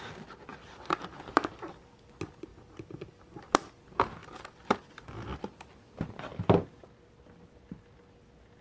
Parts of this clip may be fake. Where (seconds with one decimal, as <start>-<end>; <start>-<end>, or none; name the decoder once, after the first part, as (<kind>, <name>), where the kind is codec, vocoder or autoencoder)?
0.5-2.1 (vocoder, BigVGAN v2); 2.5-3.8; 4.2-5.4